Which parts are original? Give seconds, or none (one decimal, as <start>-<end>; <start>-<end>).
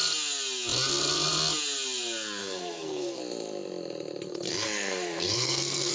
0.0-2.4; 3.2-4.3